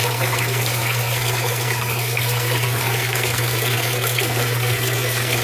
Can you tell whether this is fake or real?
fake